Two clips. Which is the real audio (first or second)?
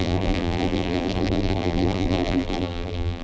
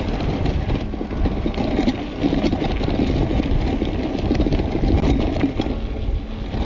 second